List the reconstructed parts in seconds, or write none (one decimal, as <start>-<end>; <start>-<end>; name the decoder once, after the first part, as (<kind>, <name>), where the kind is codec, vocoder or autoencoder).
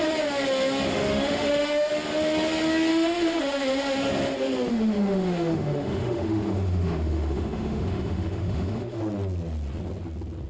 0.9-1.9 (autoencoder, DAC-VAE); 2.9-4.1; 4.7-9.0